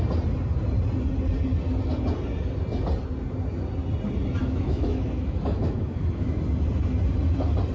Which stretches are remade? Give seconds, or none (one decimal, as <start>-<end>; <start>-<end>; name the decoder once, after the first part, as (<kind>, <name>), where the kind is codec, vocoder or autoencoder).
4.4-6.4 (autoencoder, DAC-VAE)